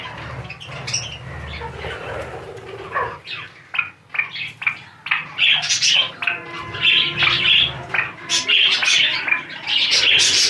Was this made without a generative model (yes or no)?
yes